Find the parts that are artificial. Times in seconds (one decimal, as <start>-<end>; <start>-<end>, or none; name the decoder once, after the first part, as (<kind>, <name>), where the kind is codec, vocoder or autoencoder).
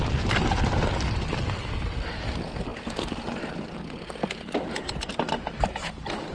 none